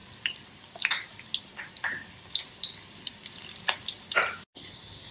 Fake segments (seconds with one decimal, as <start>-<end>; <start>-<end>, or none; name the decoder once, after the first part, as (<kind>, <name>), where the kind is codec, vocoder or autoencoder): 0.0-0.9 (vocoder, BigVGAN v2); 3.1-3.8